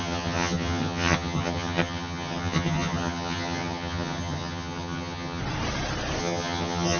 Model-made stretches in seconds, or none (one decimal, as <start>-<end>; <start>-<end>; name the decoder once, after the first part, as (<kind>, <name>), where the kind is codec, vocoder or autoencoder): 0.0-5.4 (vocoder, HiFi-GAN); 6.2-7.0